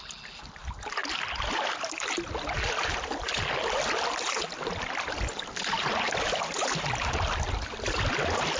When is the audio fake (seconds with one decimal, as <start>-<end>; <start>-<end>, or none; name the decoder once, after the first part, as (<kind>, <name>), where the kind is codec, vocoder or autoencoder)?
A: none